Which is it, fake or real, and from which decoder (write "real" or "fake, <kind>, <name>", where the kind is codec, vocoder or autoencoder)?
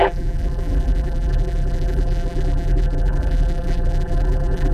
fake, vocoder, BigVGAN v2